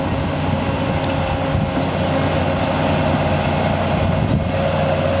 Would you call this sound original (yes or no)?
yes